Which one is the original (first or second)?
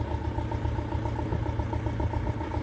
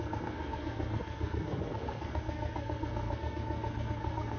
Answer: first